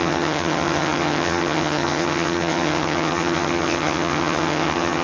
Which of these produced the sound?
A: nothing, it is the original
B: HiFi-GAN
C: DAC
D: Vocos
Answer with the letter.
B